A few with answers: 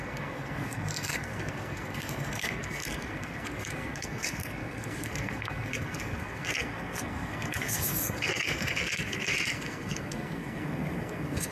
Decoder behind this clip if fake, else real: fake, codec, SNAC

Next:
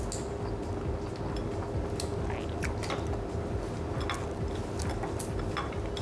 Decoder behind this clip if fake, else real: real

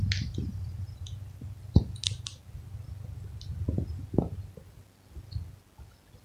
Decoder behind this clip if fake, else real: real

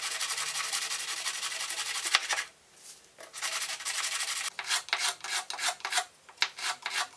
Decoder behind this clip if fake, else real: real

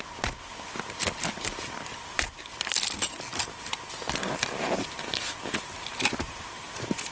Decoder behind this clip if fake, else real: real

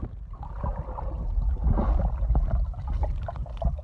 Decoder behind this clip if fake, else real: real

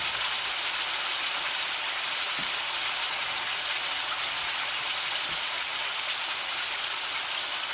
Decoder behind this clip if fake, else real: real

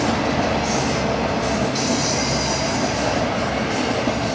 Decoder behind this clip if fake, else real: real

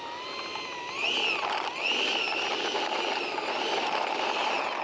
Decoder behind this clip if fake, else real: real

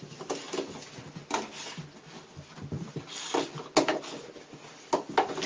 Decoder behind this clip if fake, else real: real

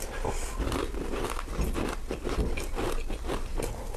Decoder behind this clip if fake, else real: real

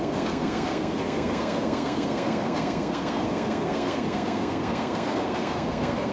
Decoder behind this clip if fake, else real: fake, codec, SNAC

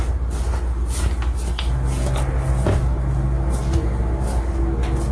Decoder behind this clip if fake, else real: real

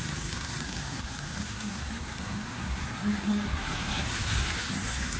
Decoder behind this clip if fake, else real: fake, codec, SNAC